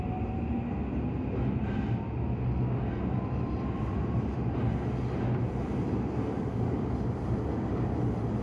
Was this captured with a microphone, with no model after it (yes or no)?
yes